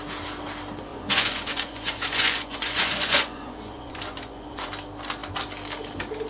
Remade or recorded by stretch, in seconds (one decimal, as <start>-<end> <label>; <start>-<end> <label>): 0.0-0.9 recorded; 0.9-4.7 remade; 4.7-6.3 recorded